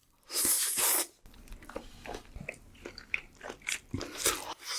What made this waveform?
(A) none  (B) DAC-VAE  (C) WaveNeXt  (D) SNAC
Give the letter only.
A